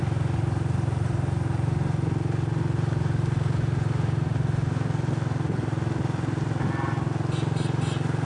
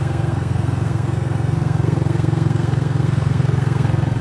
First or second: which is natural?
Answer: first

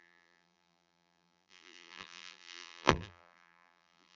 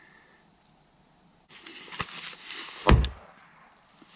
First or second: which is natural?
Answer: second